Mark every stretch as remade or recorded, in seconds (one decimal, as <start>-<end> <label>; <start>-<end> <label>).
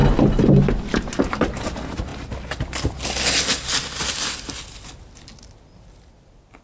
0.0-6.6 recorded